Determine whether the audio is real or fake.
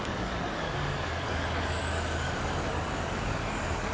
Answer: fake